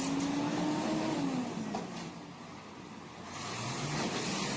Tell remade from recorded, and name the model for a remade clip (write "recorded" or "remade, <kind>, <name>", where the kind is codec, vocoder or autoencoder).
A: recorded